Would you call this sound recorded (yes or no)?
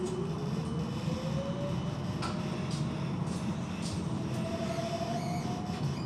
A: yes